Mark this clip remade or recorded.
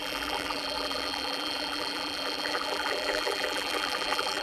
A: remade